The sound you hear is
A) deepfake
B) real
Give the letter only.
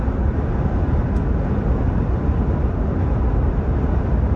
B